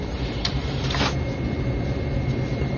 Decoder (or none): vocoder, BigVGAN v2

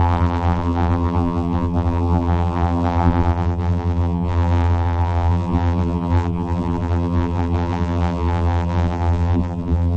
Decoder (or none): vocoder, BigVGAN v2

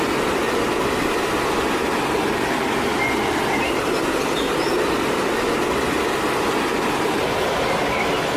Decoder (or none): none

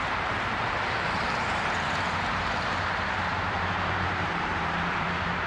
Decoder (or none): vocoder, BigVGAN v2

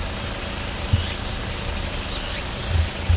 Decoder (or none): none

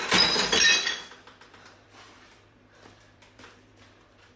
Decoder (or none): vocoder, BigVGAN v2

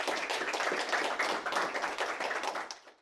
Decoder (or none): none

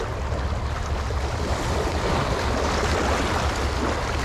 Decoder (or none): none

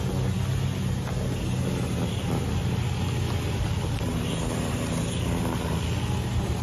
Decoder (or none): none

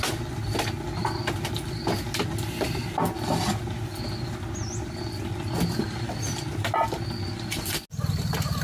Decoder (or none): none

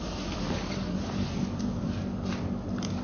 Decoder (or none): vocoder, BigVGAN v2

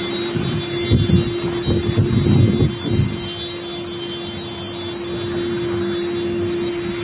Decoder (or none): none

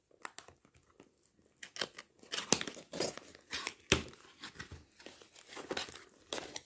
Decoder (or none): none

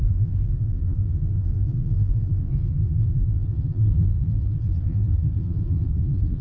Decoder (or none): vocoder, BigVGAN v2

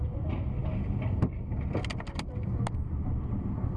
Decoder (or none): none